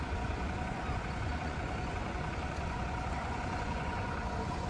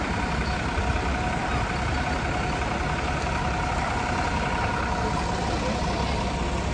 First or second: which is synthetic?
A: first